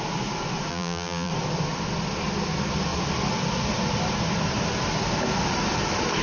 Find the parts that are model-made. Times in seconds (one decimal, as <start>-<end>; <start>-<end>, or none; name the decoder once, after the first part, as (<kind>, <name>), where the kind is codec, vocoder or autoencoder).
0.7-1.3 (vocoder, BigVGAN v2)